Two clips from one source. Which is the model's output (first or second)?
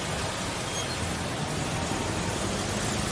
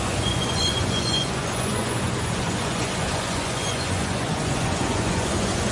second